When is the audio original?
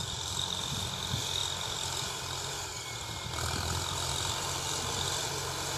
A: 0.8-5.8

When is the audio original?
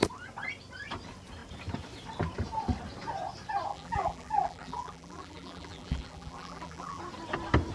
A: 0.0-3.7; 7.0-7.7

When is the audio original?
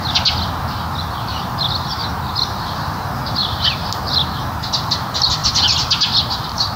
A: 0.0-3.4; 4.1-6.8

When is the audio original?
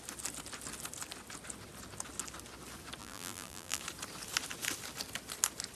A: 0.0-3.0; 3.8-5.7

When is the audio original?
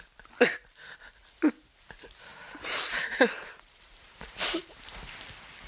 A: 0.0-2.3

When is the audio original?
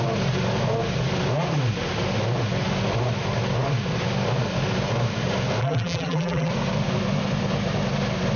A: 0.0-5.6; 6.5-8.4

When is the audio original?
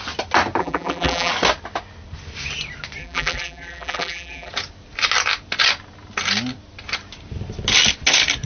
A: 0.0-0.6; 1.3-3.0; 4.5-8.5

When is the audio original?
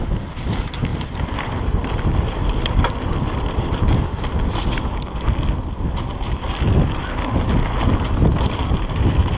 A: 0.0-9.4